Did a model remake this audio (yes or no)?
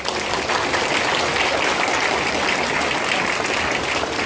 no